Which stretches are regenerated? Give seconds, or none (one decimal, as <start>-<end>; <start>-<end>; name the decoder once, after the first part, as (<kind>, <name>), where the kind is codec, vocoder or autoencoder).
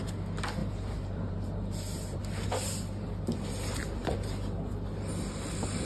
0.6-2.2 (vocoder, BigVGAN v2)